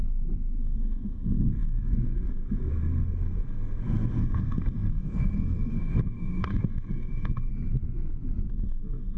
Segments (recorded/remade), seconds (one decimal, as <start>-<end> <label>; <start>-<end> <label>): 0.0-0.6 recorded; 0.6-7.5 remade; 7.5-8.5 recorded; 8.5-9.2 remade